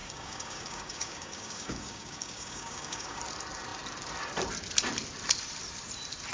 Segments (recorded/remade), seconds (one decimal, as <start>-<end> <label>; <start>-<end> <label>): 0.0-3.2 remade; 3.2-6.3 recorded